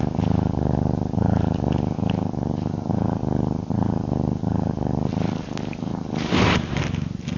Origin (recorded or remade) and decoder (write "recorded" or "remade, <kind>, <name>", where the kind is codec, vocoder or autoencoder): recorded